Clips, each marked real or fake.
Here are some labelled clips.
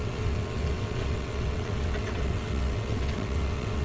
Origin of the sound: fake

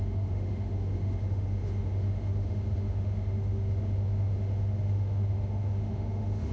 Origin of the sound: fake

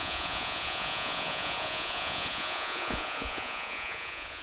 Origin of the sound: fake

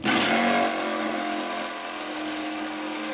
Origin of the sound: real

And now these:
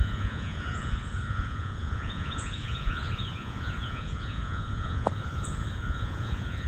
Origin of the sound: fake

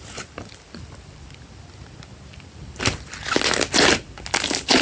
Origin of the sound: real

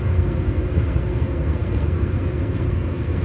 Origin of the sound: fake